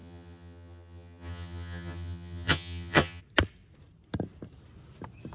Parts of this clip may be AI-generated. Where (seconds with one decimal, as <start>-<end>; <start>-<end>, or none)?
0.0-3.2